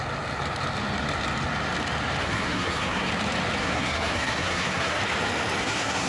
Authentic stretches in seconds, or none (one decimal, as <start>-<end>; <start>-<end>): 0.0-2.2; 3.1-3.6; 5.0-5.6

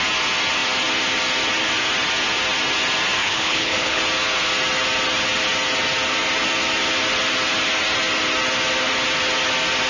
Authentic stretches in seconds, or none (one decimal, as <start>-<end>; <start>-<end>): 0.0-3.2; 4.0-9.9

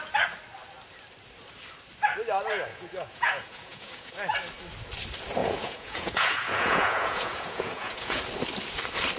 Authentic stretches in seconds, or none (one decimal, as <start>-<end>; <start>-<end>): 0.0-2.7; 4.1-5.4; 8.2-9.2